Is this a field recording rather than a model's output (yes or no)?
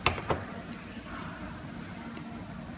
yes